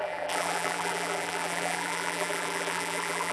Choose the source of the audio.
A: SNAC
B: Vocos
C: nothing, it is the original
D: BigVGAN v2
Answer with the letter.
D